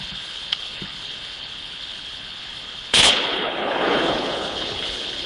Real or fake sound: fake